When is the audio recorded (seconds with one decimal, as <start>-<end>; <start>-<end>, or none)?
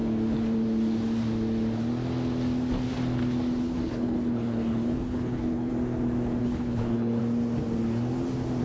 0.0-3.6; 5.7-6.4; 7.2-8.6